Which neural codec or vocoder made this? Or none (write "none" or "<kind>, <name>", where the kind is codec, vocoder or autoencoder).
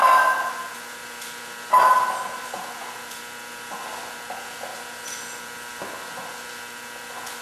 none